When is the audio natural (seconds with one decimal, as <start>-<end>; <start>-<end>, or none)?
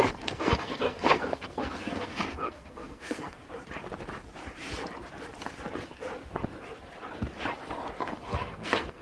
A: 3.4-8.1